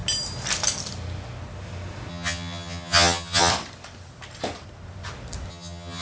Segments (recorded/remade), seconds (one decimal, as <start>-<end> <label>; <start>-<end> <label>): 0.0-2.1 recorded; 2.1-3.5 remade; 3.5-5.5 recorded; 5.5-6.0 remade